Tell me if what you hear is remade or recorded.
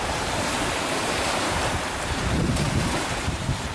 remade